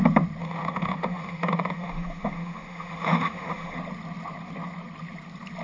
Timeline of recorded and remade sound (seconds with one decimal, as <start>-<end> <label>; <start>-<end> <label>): 0.0-0.4 recorded; 0.4-3.8 remade; 3.8-5.6 recorded